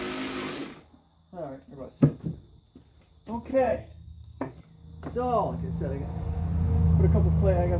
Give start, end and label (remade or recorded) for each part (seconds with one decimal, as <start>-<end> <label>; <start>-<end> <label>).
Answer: 0.0-3.5 recorded; 3.5-4.6 remade; 4.6-7.8 recorded